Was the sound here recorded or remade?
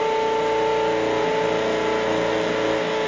recorded